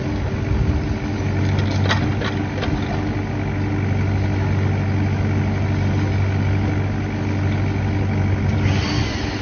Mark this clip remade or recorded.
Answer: recorded